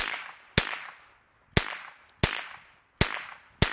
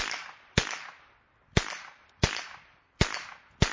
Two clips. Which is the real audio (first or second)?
first